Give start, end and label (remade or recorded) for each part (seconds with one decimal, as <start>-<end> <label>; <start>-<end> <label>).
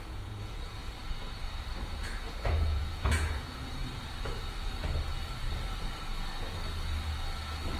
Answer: 0.0-0.8 remade; 0.8-1.8 recorded; 1.8-3.8 remade; 3.8-7.8 recorded